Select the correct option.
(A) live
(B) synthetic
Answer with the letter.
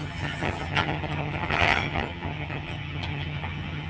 B